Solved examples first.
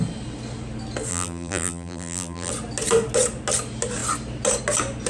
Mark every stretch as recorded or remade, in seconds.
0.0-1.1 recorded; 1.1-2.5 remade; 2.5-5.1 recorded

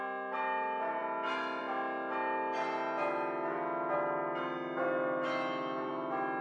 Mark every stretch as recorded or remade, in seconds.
0.0-6.4 recorded

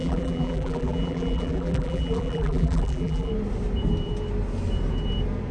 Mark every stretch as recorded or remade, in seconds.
0.0-3.3 remade; 3.3-5.5 recorded